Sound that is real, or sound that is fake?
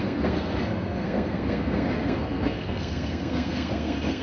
fake